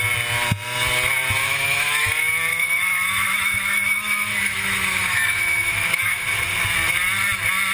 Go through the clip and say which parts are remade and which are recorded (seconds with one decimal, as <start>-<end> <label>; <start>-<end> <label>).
0.0-1.4 recorded; 1.4-2.1 remade; 2.1-2.5 recorded; 2.5-6.4 remade; 6.4-7.7 recorded